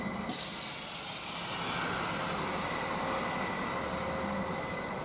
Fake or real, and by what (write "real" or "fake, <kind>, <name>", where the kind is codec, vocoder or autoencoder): real